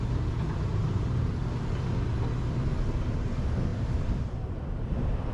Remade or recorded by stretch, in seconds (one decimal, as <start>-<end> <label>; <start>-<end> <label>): 0.0-0.7 recorded; 0.7-1.3 remade; 1.3-3.7 recorded; 3.7-4.5 remade; 4.5-5.3 recorded